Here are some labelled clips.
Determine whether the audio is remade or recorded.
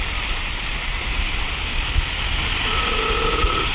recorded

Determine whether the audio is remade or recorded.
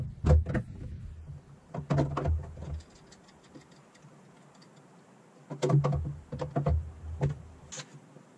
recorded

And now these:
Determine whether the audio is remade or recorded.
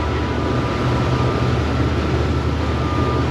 recorded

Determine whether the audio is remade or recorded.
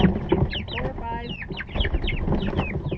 recorded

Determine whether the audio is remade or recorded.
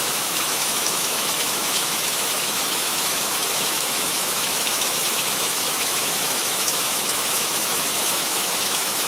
remade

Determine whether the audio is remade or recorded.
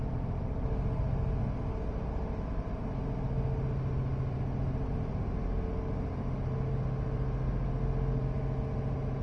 recorded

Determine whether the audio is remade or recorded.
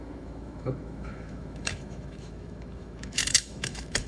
remade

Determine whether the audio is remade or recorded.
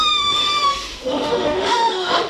remade